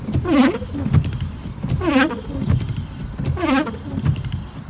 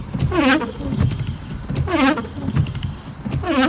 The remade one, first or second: first